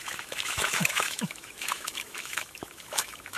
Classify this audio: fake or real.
fake